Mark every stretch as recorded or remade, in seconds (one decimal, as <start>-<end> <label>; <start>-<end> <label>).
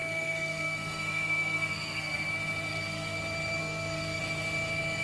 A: 0.0-2.3 remade; 2.3-2.7 recorded; 2.7-3.2 remade; 3.2-3.6 recorded; 3.6-4.2 remade; 4.2-5.0 recorded